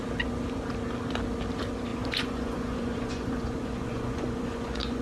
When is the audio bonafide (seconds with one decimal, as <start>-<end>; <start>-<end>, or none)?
0.0-1.9

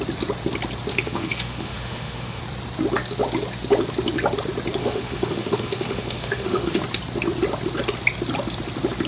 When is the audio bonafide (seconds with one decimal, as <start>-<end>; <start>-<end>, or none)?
0.0-0.9; 2.4-4.8; 6.8-9.1

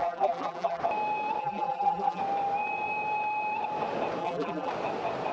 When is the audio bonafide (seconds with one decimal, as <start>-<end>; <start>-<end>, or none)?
0.8-1.4; 2.2-4.2; 4.7-5.3

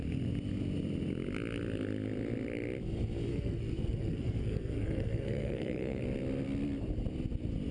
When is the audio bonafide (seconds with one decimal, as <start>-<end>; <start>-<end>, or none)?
0.0-3.3; 6.0-7.7

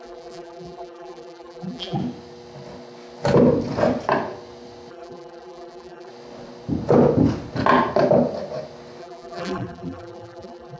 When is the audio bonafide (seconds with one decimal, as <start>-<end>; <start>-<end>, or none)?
2.0-4.9; 6.1-9.0

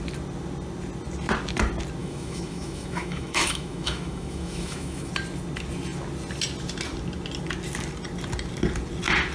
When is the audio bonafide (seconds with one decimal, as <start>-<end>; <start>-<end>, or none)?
0.0-2.0; 5.1-9.3

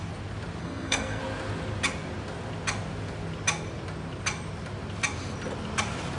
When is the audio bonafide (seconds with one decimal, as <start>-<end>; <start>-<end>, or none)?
0.0-0.6; 1.2-6.2

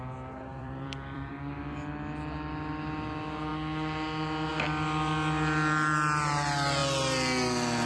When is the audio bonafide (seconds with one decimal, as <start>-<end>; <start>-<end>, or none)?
0.0-0.5; 1.3-7.9